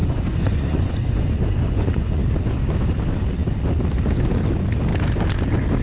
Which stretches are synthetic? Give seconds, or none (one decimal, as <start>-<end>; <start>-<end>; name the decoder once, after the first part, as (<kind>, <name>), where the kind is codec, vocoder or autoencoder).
0.0-2.2 (vocoder, Vocos)